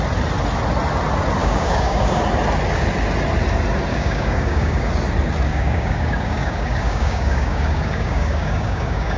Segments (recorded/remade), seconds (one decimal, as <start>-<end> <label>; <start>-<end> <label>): 0.0-1.4 recorded; 1.4-2.2 remade; 2.2-3.9 recorded; 3.9-4.9 remade; 4.9-5.5 recorded; 5.5-9.2 remade

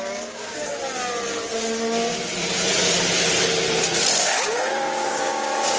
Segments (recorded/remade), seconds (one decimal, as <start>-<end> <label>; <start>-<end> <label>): 0.0-0.7 remade; 0.7-4.2 recorded; 4.2-5.8 remade

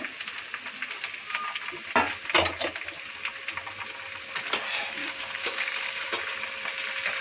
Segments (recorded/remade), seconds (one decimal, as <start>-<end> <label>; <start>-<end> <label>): 0.0-5.0 recorded; 5.0-6.1 remade; 6.1-7.2 recorded

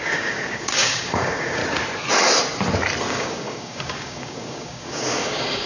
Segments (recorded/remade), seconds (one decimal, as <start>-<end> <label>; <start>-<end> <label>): 0.0-1.6 remade; 1.6-3.1 recorded; 3.1-5.7 remade

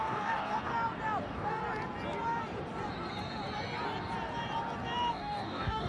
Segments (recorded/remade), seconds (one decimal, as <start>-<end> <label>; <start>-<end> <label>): 0.0-0.7 remade; 0.7-1.2 recorded; 1.2-1.6 remade; 1.6-5.1 recorded; 5.1-5.9 remade

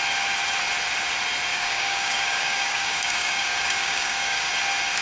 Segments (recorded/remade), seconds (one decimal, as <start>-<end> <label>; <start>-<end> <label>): 0.0-1.5 recorded; 1.5-4.5 remade; 4.5-5.0 recorded